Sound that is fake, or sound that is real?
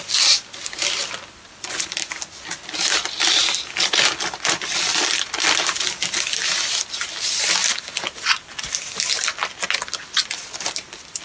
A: real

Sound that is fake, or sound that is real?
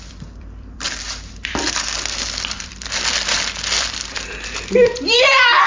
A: fake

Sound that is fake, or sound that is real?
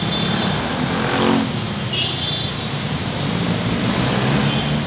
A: real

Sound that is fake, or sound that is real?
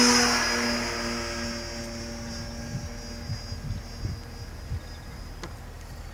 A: real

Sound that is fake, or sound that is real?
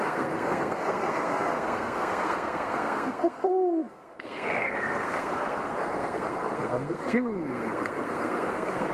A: fake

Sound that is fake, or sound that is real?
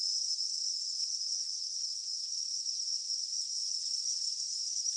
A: fake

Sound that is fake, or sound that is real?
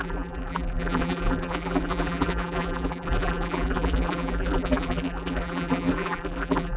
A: fake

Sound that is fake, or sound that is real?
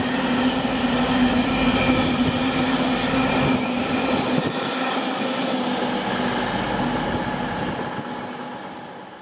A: real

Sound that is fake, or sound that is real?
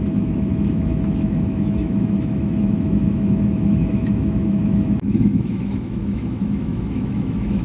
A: fake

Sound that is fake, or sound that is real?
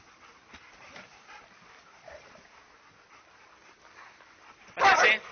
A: real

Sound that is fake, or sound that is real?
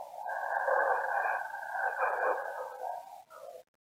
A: real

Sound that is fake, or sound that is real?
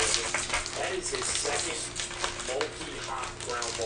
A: real